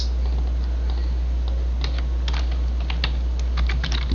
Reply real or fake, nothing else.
real